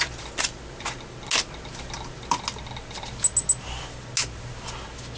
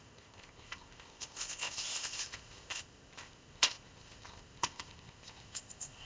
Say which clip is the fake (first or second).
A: second